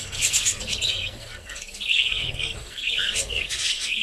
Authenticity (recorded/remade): remade